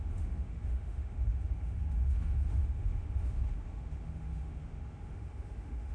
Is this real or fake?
fake